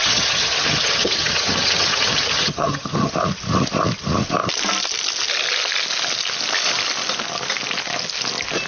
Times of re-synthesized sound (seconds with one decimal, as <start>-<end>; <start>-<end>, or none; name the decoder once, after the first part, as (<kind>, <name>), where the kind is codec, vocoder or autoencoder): 0.0-3.1 (vocoder, HiFi-GAN)